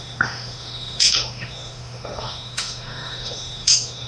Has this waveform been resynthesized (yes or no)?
yes